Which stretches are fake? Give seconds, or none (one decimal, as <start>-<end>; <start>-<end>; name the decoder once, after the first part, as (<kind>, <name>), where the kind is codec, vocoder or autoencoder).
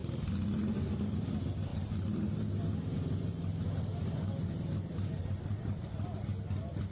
none